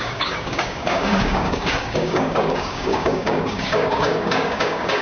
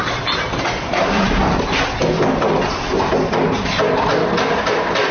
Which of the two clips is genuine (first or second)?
second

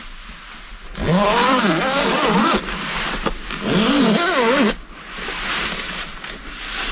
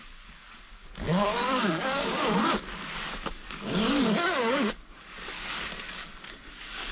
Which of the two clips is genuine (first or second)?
first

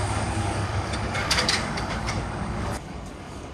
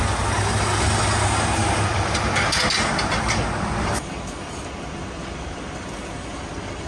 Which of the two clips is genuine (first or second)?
second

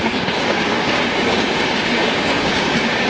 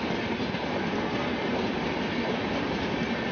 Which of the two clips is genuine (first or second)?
second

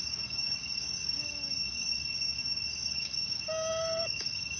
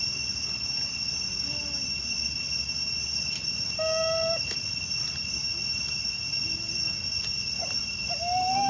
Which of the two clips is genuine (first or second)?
second